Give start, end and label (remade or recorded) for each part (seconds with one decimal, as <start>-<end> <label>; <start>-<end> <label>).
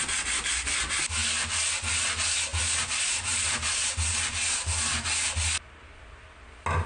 0.0-6.9 recorded